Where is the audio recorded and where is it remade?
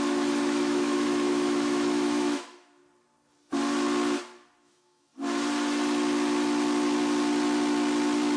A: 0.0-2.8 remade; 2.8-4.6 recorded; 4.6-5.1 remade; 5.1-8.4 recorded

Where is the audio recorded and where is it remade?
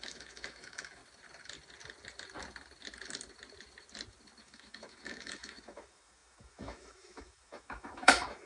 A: 0.0-1.0 remade; 1.0-4.4 recorded; 4.4-8.5 remade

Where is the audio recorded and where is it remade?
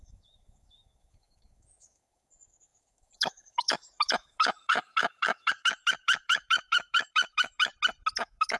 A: 0.0-7.7 remade; 7.7-8.2 recorded; 8.2-8.6 remade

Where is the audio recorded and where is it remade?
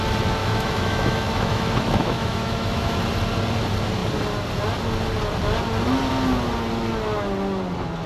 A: 0.0-0.4 recorded; 0.4-3.0 remade; 3.0-8.1 recorded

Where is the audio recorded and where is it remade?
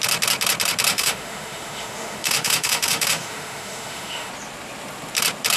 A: 0.0-0.9 recorded; 0.9-4.3 remade; 4.3-5.6 recorded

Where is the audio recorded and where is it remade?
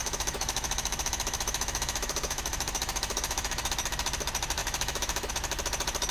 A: 0.0-3.7 remade; 3.7-4.6 recorded; 4.6-5.3 remade; 5.3-6.1 recorded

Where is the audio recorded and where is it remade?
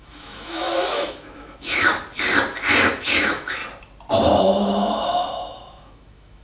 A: 0.0-1.9 remade; 1.9-2.9 recorded; 2.9-3.6 remade; 3.6-4.4 recorded; 4.4-6.4 remade